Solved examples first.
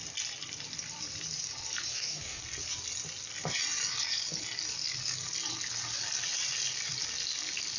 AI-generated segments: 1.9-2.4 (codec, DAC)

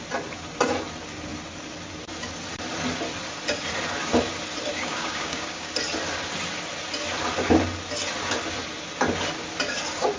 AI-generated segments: 4.7-5.7 (codec, DAC)

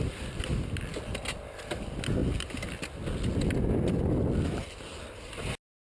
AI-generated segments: none

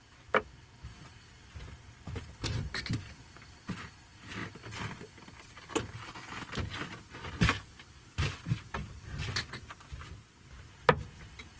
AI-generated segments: none

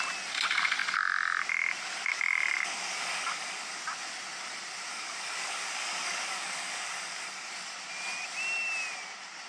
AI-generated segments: 2.1-3.8 (codec, DAC); 4.9-7.5

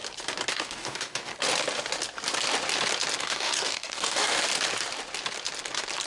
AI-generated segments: 0.5-1.3 (codec, DAC); 3.2-4.4

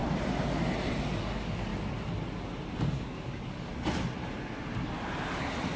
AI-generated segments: 1.2-1.7 (codec, DAC); 2.8-3.7

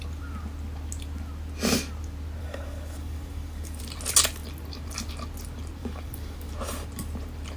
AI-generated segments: 2.4-3.8 (codec, DAC); 5.8-6.5